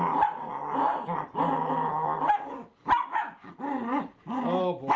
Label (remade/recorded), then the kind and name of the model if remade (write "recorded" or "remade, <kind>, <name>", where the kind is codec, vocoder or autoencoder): recorded